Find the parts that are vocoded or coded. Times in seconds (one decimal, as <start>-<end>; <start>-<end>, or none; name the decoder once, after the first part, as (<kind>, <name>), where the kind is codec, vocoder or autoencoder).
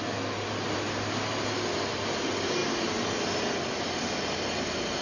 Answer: none